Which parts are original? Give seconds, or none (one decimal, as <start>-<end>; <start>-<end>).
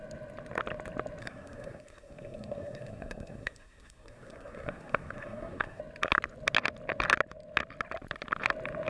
0.0-1.2; 5.8-8.9